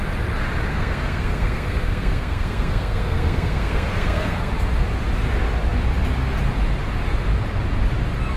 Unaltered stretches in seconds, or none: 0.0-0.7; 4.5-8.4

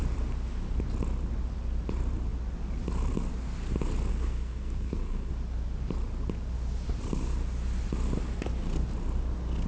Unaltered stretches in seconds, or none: 0.0-4.1; 5.3-9.7

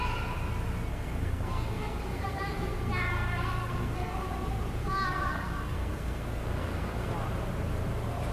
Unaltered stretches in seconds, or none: 0.0-0.9; 4.3-4.8; 7.1-8.3